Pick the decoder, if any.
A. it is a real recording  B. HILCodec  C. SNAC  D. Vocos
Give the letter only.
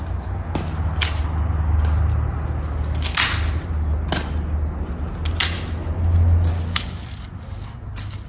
A